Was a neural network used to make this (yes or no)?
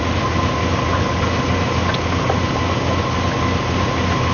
no